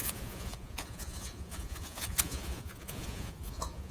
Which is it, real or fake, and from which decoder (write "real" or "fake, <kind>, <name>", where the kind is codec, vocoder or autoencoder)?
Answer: fake, vocoder, Vocos